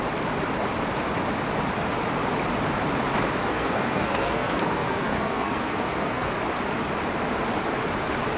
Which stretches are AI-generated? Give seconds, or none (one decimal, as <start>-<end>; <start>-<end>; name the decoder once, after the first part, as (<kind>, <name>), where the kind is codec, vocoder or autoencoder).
3.4-6.3 (codec, SNAC)